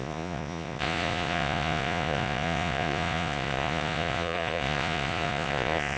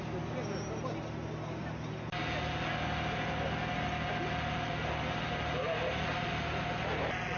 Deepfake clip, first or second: first